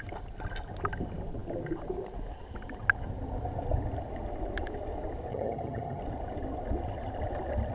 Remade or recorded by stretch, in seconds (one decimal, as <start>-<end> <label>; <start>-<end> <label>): 0.0-5.3 recorded; 5.3-6.0 remade; 6.0-7.7 recorded

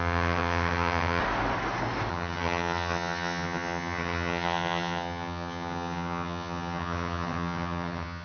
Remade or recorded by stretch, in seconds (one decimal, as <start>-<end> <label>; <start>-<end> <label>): 0.0-1.2 remade; 1.2-2.1 recorded; 2.1-8.2 remade

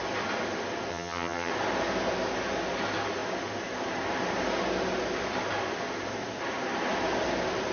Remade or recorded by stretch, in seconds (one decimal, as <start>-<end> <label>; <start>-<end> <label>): 0.0-0.9 recorded; 0.9-1.5 remade; 1.5-7.7 recorded

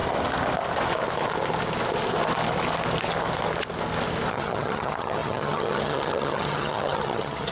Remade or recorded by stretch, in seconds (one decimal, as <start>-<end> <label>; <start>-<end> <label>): 0.0-4.3 recorded; 4.3-7.5 remade